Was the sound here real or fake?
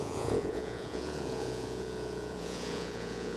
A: fake